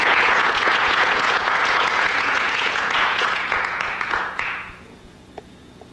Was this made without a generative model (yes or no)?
no